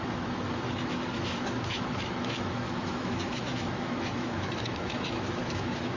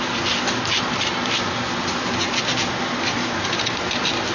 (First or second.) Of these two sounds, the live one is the second